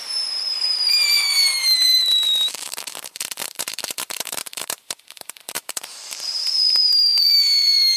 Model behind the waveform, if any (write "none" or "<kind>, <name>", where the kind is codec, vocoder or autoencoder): vocoder, BigVGAN v2